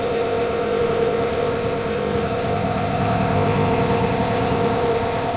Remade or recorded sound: remade